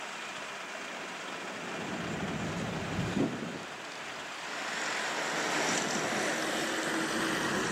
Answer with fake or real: real